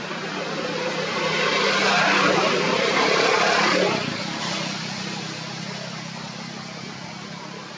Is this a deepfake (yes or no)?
no